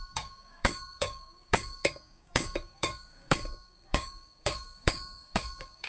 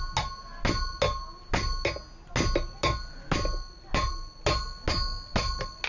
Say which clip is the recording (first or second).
second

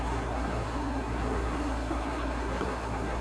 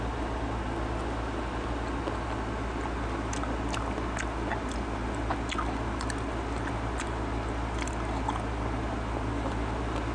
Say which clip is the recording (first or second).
second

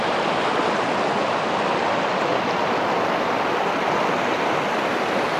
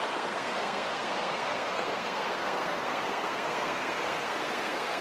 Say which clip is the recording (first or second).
first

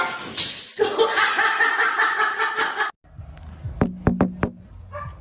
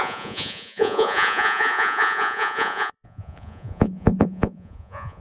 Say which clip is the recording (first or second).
first